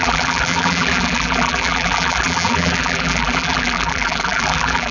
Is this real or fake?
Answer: fake